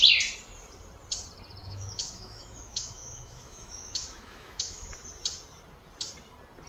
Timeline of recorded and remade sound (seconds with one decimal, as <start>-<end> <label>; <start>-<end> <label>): 0.0-1.6 recorded; 1.6-4.9 remade; 4.9-6.7 recorded

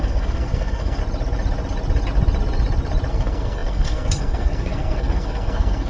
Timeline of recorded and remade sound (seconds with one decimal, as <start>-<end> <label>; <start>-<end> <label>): 0.0-1.0 remade; 1.0-3.1 recorded; 3.1-5.9 remade

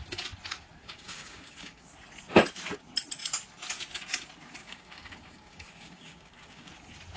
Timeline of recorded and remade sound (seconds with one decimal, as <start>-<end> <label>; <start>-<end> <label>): 0.0-0.8 recorded; 0.8-1.9 remade; 1.9-4.6 recorded; 4.6-6.7 remade; 6.7-7.2 recorded

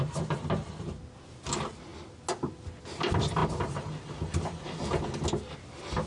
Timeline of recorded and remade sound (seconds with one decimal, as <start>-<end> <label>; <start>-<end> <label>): 0.0-6.1 recorded